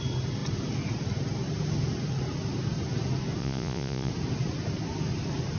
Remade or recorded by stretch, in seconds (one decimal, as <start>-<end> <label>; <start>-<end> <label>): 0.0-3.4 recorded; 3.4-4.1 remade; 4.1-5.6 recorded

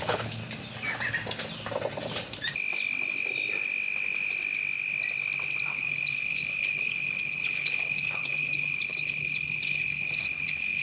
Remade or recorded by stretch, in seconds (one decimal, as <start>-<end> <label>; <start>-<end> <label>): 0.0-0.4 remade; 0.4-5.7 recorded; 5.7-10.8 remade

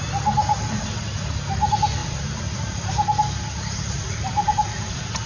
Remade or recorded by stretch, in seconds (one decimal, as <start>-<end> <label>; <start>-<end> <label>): 0.0-2.0 recorded; 2.0-2.9 remade; 2.9-5.3 recorded

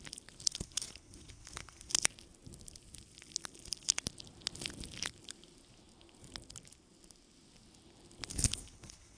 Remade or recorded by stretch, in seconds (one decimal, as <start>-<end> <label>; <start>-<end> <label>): 0.0-0.5 recorded; 0.5-1.9 remade; 1.9-8.3 recorded; 8.3-9.2 remade

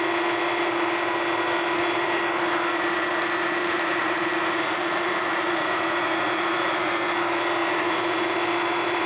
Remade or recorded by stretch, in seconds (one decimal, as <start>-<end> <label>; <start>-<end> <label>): 0.0-3.6 recorded; 3.6-6.9 remade; 6.9-7.6 recorded; 7.6-8.3 remade; 8.3-9.1 recorded

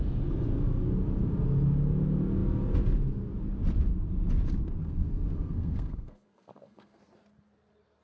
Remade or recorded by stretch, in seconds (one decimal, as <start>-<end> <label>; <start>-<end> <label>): 0.0-4.8 recorded; 4.8-7.0 remade; 7.0-8.0 recorded

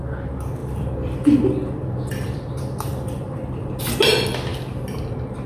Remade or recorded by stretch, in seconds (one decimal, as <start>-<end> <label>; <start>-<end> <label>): 0.0-0.6 recorded; 0.6-3.8 remade; 3.8-5.5 recorded

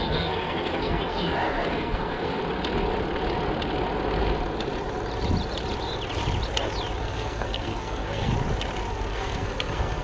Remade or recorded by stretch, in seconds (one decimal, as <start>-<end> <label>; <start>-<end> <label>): 0.0-2.4 remade; 2.4-7.0 recorded; 7.0-8.3 remade; 8.3-8.9 recorded; 8.9-10.0 remade